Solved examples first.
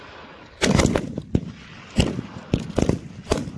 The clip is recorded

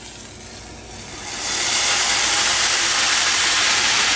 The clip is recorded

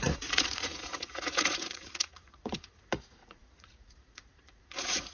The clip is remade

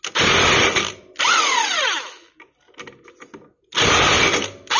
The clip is recorded